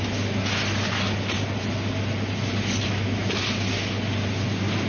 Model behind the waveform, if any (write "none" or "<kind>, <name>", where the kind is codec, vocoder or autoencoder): none